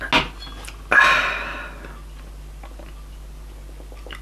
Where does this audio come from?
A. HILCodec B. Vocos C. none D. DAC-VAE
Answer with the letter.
C